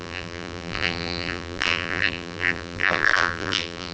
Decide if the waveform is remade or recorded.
remade